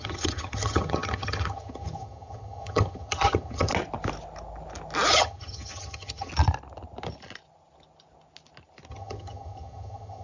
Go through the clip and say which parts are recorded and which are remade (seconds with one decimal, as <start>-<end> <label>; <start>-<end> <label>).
0.0-3.7 remade; 3.7-5.1 recorded; 5.1-6.3 remade; 6.3-8.9 recorded; 8.9-10.2 remade